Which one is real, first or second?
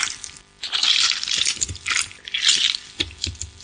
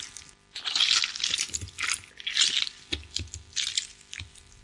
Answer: second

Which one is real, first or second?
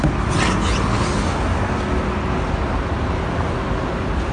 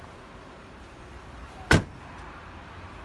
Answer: first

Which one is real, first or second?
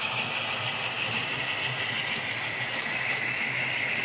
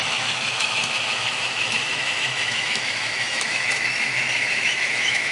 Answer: first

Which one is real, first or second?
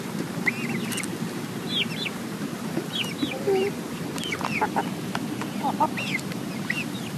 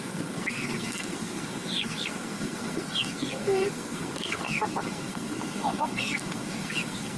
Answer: first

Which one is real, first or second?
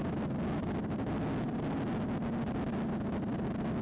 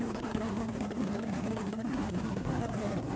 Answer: first